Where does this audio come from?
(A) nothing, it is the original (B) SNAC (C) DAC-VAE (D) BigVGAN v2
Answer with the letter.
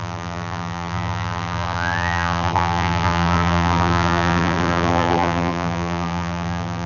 D